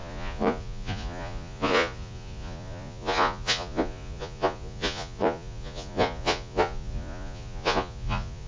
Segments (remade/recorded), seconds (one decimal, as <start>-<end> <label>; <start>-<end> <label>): 0.0-8.5 remade